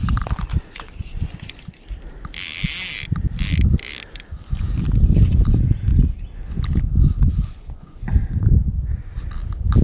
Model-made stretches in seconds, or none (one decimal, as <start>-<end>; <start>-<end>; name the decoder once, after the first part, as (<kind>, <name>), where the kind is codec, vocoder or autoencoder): 0.5-1.6 (vocoder, Vocos); 7.3-9.0